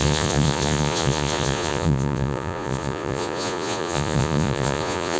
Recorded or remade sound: remade